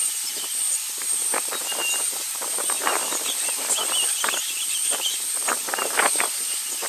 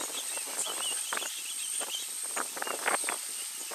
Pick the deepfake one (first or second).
first